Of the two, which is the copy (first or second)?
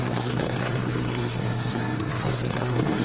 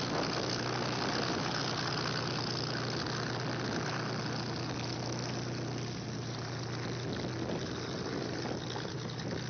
first